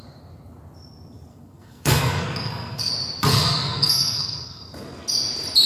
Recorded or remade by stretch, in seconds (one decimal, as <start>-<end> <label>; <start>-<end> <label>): 0.0-1.3 recorded; 1.3-2.9 remade; 2.9-3.3 recorded; 3.3-4.6 remade; 4.6-5.7 recorded